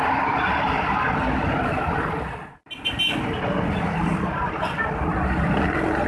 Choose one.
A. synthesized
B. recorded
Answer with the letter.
B